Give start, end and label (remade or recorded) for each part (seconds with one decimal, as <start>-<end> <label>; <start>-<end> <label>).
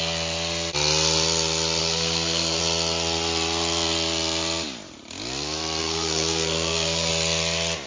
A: 0.0-1.8 recorded; 1.8-2.6 remade; 2.6-5.8 recorded; 5.8-7.1 remade; 7.1-7.9 recorded